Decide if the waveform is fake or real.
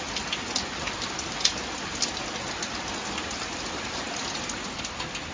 real